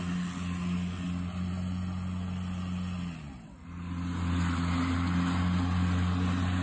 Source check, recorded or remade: recorded